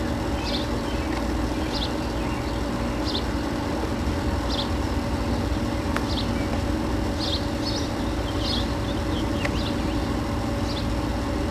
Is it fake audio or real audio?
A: real